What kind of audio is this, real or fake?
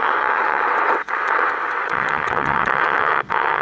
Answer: fake